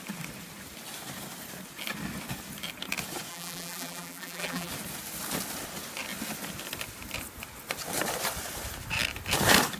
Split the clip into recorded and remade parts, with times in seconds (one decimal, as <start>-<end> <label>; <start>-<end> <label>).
0.0-3.3 recorded; 3.3-4.7 remade; 4.7-9.8 recorded

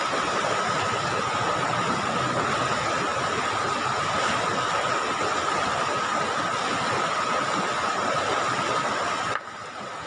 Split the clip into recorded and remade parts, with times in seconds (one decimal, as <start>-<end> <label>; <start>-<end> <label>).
0.0-10.1 recorded

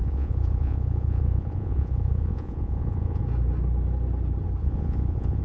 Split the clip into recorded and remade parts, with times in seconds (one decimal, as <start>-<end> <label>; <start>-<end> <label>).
0.0-3.2 remade; 3.2-4.6 recorded; 4.6-5.4 remade

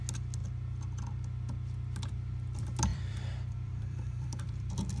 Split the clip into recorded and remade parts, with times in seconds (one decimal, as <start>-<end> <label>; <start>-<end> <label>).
0.0-2.9 recorded; 2.9-5.0 remade

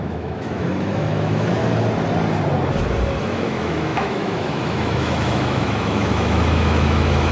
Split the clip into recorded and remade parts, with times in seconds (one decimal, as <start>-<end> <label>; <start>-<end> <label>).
0.0-1.6 remade; 1.6-3.2 recorded; 3.2-7.3 remade